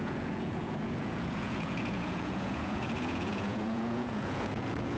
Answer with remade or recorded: remade